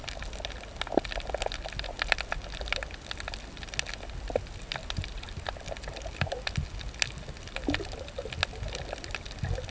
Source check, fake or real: real